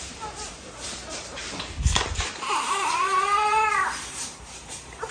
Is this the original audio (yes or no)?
no